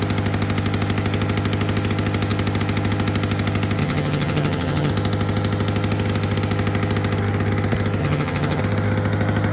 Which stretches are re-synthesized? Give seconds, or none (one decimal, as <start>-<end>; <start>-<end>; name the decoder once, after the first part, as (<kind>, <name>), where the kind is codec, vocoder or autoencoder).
3.8-4.9 (vocoder, HiFi-GAN); 8.0-8.6